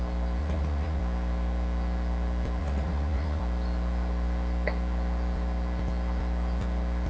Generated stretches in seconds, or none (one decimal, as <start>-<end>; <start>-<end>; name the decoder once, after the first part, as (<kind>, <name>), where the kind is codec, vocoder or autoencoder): 0.4-1.0 (vocoder, Vocos); 2.6-3.4